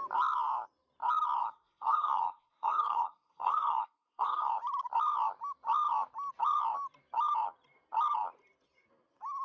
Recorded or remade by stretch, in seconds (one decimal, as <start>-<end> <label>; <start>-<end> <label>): 0.0-1.4 recorded; 1.4-4.5 remade; 4.5-9.4 recorded